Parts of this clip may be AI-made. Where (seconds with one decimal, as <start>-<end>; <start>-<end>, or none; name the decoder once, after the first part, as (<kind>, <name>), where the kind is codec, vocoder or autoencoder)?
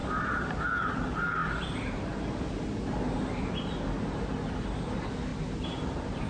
none